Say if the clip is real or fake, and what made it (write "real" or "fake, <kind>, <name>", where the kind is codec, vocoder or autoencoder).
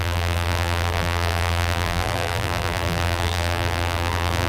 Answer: fake, vocoder, BigVGAN v2